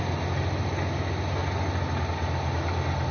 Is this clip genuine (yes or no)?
yes